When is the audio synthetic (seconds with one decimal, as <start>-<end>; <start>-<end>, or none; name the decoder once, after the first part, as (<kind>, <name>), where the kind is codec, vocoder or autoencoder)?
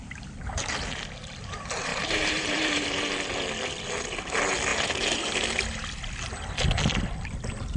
1.9-3.1 (vocoder, BigVGAN v2); 4.7-5.2